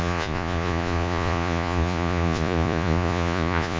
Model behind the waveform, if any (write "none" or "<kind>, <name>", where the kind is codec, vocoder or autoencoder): vocoder, Vocos